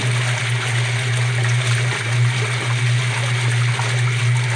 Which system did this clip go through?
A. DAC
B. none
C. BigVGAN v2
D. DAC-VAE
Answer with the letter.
B